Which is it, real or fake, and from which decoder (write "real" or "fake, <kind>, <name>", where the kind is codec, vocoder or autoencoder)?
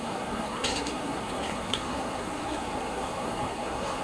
fake, codec, SNAC